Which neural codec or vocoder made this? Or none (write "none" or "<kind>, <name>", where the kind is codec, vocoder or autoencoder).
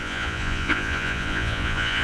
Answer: vocoder, Vocos